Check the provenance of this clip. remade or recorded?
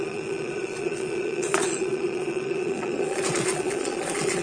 remade